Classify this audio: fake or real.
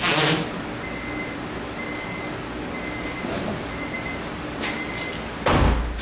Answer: real